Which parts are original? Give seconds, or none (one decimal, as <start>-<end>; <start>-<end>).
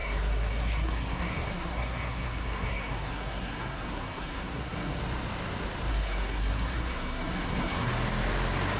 5.0-5.9; 7.9-8.8